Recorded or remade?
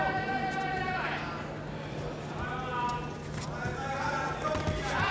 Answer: recorded